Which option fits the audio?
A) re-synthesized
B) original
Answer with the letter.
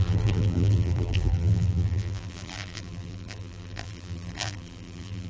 A